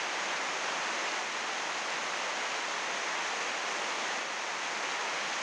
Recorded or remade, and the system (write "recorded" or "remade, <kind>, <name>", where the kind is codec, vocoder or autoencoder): recorded